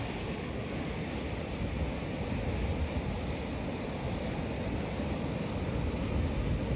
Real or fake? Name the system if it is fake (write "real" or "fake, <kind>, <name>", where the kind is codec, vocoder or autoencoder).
real